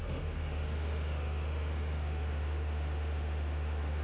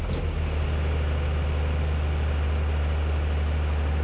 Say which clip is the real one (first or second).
second